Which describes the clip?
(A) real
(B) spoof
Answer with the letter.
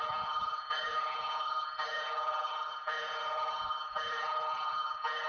B